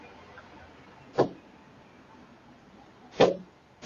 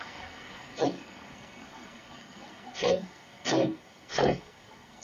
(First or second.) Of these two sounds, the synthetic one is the second